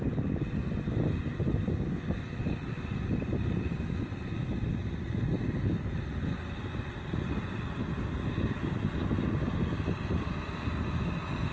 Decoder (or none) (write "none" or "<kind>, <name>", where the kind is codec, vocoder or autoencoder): none